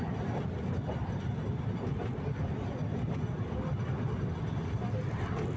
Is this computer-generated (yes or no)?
no